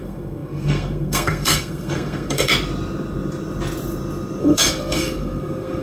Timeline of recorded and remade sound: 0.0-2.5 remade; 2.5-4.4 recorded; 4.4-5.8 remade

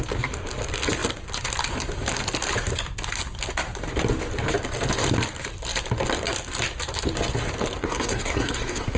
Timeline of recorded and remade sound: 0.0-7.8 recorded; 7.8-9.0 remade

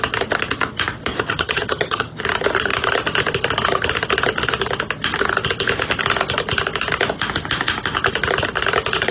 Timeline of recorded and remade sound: 0.0-1.1 recorded; 1.1-2.2 remade; 2.2-9.1 recorded